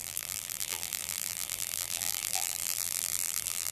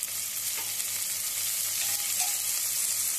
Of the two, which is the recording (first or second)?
second